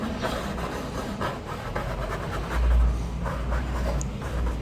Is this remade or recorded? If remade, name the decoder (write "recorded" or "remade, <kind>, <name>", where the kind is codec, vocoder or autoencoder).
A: recorded